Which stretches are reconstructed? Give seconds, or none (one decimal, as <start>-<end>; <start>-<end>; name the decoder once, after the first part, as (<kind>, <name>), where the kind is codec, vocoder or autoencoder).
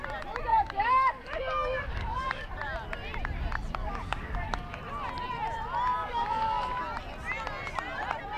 0.5-2.5 (codec, DAC); 3.8-4.8; 6.0-6.8